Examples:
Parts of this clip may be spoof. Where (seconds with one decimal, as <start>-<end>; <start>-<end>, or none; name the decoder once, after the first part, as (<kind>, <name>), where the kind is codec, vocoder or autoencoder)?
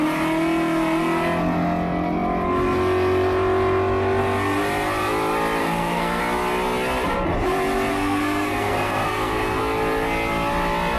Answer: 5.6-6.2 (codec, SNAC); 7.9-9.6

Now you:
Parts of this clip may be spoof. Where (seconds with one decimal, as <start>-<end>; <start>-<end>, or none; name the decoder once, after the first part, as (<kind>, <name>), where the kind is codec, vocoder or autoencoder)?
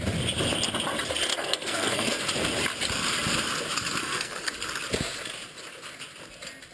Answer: 1.3-2.2 (codec, SNAC); 4.0-4.5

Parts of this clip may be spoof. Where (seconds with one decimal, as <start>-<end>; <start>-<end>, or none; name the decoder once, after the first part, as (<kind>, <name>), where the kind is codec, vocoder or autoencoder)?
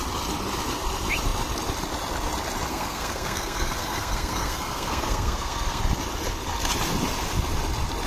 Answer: 2.7-5.8 (codec, SNAC)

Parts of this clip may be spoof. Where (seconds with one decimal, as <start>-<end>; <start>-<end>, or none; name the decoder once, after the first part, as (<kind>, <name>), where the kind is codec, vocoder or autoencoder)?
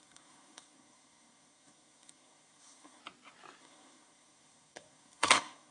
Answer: 0.0-3.0 (codec, SNAC); 3.6-5.7